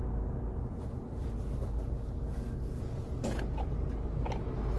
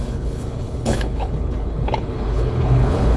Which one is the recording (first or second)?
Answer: first